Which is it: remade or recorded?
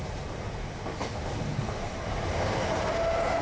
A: recorded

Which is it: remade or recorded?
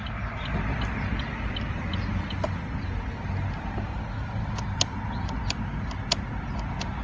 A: recorded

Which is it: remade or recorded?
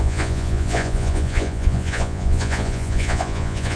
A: remade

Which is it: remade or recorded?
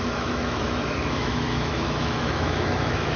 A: remade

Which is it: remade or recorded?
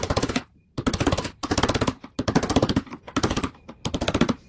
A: remade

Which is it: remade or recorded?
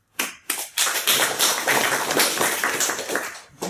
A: remade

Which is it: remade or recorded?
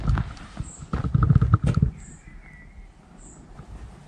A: recorded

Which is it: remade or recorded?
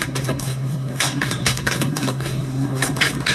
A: remade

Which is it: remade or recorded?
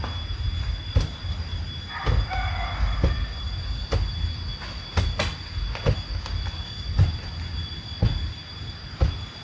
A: recorded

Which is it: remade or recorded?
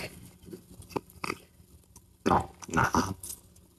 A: recorded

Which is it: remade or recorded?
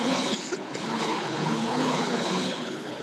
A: remade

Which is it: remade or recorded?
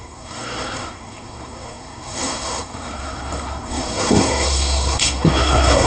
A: remade